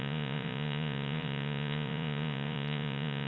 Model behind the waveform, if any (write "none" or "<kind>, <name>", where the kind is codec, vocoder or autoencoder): vocoder, Vocos